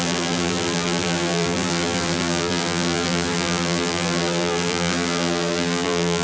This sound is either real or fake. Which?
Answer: fake